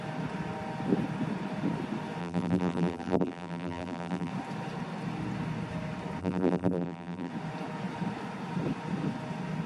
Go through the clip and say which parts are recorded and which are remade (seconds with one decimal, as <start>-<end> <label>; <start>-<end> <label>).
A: 0.0-2.2 recorded; 2.2-4.3 remade; 4.3-6.2 recorded; 6.2-7.3 remade; 7.3-9.7 recorded